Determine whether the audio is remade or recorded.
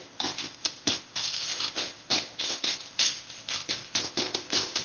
remade